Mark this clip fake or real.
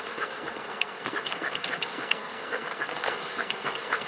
fake